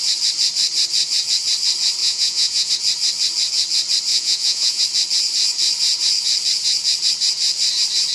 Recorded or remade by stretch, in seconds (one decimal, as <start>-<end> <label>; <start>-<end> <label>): 0.0-2.0 recorded; 2.0-2.7 remade; 2.7-4.1 recorded; 4.1-4.8 remade; 4.8-8.1 recorded